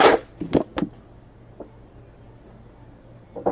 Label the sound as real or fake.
real